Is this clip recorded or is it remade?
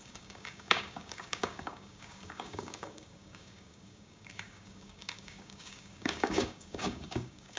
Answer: remade